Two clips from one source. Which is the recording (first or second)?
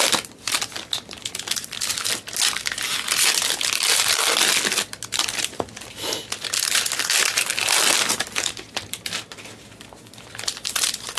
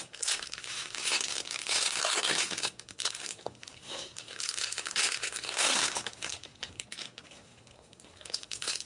first